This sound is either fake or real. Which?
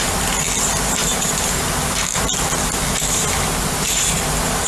real